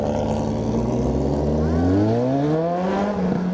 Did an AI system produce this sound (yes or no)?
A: no